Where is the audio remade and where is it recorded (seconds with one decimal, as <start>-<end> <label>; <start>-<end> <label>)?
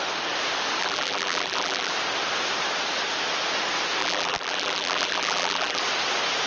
0.0-0.8 recorded; 0.8-1.9 remade; 1.9-4.0 recorded; 4.0-5.8 remade; 5.8-6.5 recorded